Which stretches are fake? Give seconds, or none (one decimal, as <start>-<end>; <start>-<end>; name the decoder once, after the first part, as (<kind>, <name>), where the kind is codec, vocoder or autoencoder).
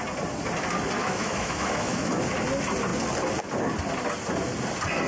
1.0-2.1 (autoencoder, DAC-VAE)